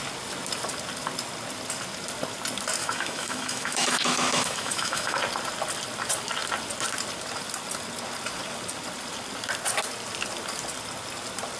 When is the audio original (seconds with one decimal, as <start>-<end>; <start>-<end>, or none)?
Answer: 0.0-2.8; 5.2-11.6

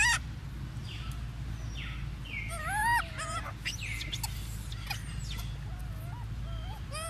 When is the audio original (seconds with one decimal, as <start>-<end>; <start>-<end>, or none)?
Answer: 0.0-7.1

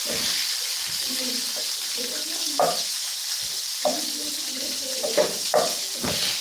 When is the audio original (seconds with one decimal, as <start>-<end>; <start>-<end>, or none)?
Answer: 0.0-2.4; 3.1-6.4